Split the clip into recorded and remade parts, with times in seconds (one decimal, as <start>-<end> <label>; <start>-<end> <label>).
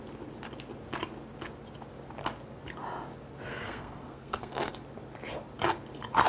0.0-3.5 recorded; 3.5-4.7 remade; 4.7-6.3 recorded